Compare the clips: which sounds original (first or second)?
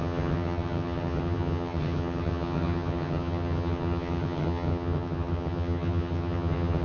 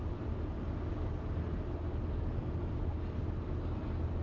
second